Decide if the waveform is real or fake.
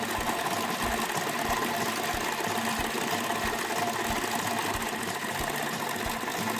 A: real